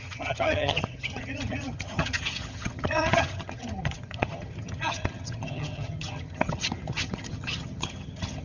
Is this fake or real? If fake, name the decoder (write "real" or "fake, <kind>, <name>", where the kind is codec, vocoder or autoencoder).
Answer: fake, vocoder, HiFi-GAN